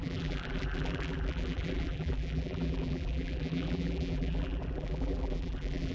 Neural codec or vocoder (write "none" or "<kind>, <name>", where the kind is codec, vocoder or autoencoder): vocoder, BigVGAN v2